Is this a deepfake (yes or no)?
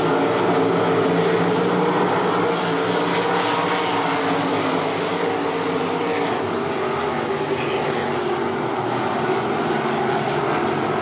no